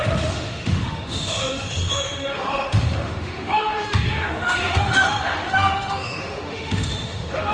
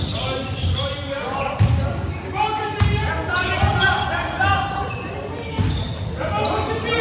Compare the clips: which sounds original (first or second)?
second